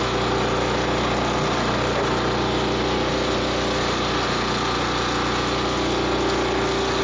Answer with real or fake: real